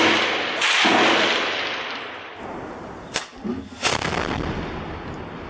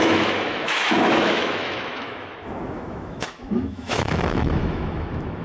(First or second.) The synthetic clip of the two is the second